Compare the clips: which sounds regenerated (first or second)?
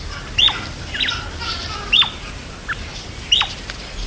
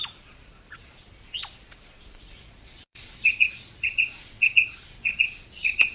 second